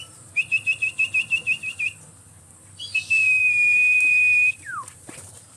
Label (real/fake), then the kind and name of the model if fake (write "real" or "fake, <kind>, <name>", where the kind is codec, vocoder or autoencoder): fake, vocoder, BigVGAN v2